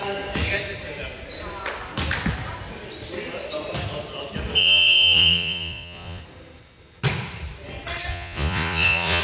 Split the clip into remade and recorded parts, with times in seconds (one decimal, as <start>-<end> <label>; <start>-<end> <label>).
0.0-4.6 recorded; 4.6-6.2 remade; 6.2-8.1 recorded; 8.1-9.2 remade